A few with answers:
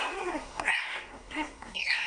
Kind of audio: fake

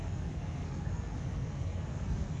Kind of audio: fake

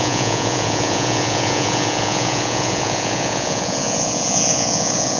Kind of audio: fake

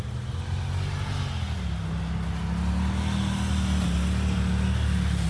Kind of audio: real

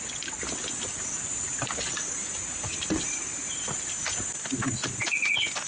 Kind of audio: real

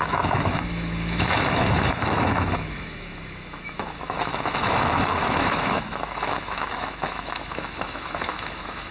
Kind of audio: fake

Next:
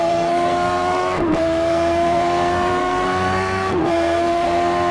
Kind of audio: fake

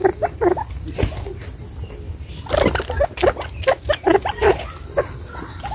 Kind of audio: real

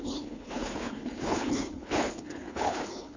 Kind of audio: fake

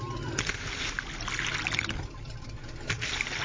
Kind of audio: real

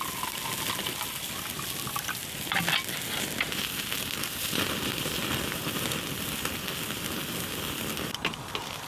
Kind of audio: real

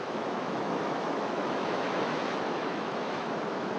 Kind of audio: fake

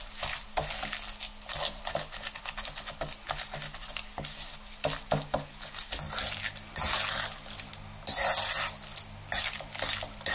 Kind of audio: real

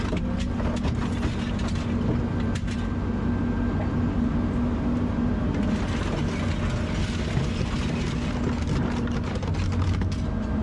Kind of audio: real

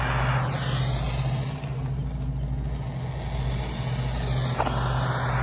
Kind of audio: real